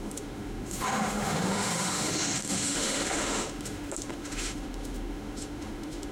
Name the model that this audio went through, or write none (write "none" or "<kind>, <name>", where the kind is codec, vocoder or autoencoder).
autoencoder, DAC-VAE